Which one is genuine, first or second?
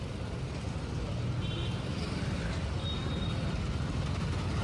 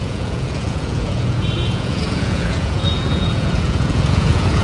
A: first